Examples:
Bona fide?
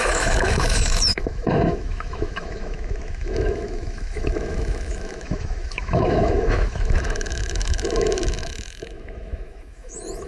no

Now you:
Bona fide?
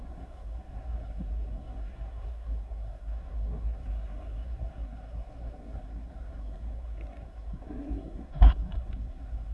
no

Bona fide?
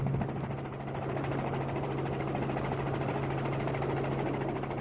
yes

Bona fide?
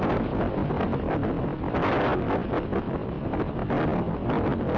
yes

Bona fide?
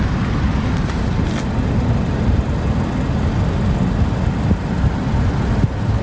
yes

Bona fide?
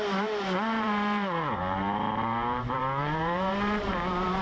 no